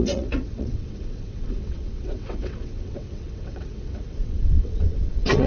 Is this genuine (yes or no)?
no